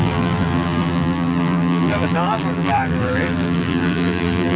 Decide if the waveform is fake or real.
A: fake